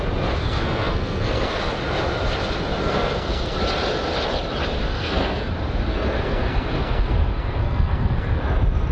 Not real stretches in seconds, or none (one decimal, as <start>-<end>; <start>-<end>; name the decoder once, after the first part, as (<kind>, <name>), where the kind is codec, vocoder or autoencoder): 0.4-1.6 (codec, SNAC); 2.8-3.6; 4.9-5.5; 5.9-8.4